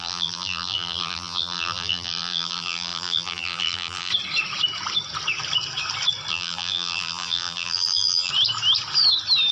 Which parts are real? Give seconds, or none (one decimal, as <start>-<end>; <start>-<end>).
4.1-6.3; 8.3-9.5